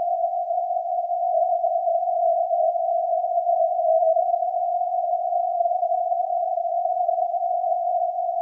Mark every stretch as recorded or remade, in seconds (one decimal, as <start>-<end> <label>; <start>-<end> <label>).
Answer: 0.0-3.9 remade; 3.9-4.5 recorded; 4.5-5.5 remade; 5.5-7.4 recorded; 7.4-8.4 remade

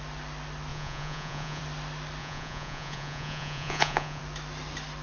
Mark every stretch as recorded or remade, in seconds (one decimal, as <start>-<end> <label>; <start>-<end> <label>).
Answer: 0.0-0.7 recorded; 0.7-1.6 remade; 1.6-2.2 recorded; 2.2-4.2 remade; 4.2-5.0 recorded

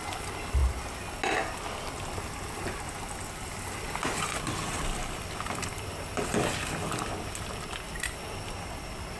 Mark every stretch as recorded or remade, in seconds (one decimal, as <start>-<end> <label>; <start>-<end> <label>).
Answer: 0.0-9.2 recorded

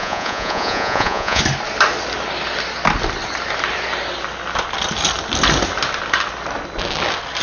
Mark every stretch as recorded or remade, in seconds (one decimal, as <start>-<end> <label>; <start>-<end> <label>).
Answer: 0.0-1.4 remade; 1.4-7.4 recorded

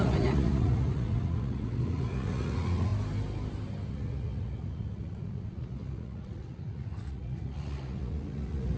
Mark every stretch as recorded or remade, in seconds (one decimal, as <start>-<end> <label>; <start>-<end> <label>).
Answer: 0.0-2.9 remade; 2.9-3.9 recorded; 3.9-8.8 remade

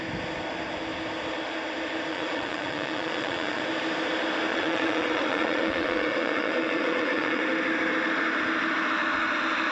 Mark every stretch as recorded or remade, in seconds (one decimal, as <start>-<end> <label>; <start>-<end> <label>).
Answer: 0.0-2.1 recorded; 2.1-3.6 remade; 3.6-4.5 recorded; 4.5-7.4 remade; 7.4-9.7 recorded

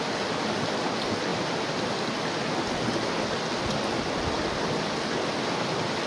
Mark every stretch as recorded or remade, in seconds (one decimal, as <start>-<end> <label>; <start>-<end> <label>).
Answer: 0.0-6.1 recorded